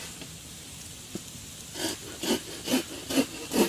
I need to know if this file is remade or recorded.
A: recorded